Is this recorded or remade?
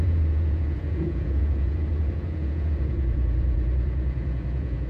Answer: remade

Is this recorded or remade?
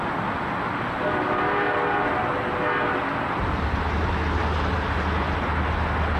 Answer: recorded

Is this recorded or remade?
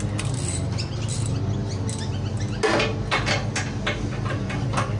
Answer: recorded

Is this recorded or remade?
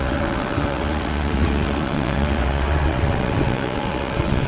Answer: remade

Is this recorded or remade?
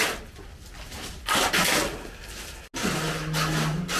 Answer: recorded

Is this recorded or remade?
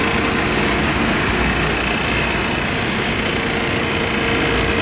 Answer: recorded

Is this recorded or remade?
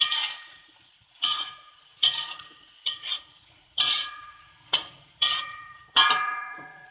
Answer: remade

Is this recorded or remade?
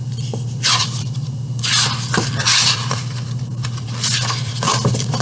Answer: remade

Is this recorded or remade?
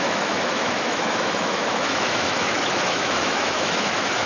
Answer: remade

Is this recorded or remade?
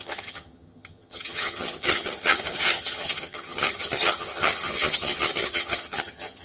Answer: remade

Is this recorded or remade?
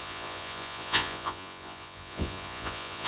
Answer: remade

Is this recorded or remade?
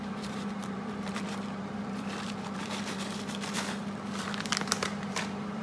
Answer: remade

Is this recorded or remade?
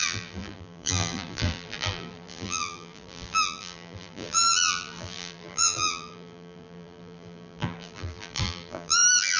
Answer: remade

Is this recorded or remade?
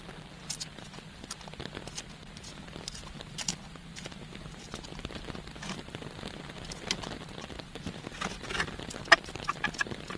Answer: recorded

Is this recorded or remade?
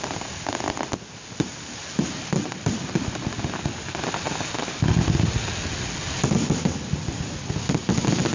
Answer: recorded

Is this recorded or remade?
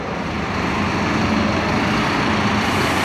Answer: recorded